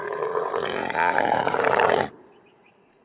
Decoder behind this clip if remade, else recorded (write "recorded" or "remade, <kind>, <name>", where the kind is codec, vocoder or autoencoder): remade, vocoder, Vocos